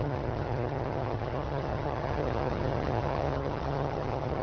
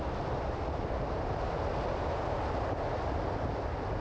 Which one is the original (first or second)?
second